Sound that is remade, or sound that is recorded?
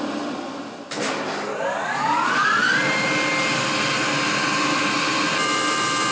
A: recorded